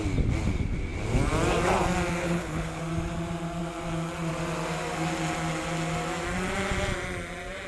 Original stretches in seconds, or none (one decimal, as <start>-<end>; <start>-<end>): 0.0-2.2; 2.8-7.7

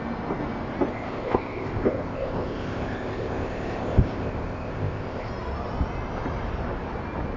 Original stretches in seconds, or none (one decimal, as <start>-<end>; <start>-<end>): 0.0-0.9; 5.3-7.4

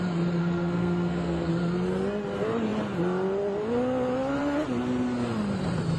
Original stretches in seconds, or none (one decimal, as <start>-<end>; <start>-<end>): 0.0-0.4; 1.5-6.0

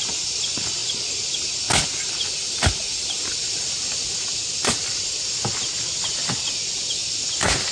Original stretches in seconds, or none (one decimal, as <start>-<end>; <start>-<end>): 0.0-7.7